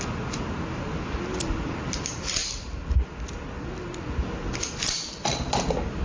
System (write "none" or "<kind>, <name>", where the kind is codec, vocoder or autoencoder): none